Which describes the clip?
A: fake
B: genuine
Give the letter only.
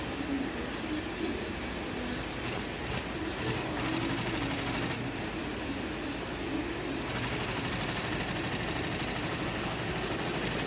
B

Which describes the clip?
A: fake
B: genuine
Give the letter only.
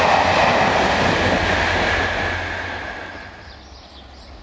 B